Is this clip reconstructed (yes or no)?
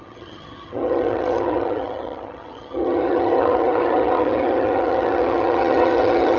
yes